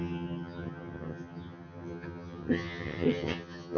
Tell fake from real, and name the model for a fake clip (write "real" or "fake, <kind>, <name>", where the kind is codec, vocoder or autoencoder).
fake, vocoder, HiFi-GAN